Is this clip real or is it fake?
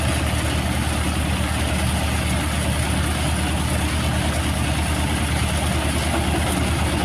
real